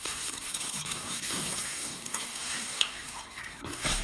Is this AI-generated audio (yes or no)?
yes